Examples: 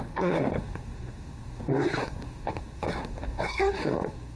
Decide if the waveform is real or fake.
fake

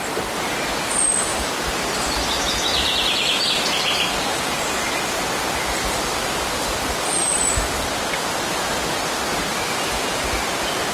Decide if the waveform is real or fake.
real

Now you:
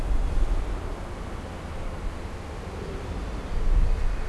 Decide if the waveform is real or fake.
real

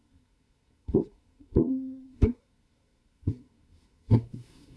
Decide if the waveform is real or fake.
fake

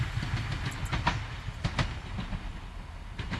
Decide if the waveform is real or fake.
real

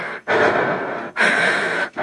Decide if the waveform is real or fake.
fake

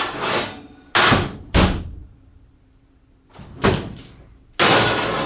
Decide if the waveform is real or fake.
real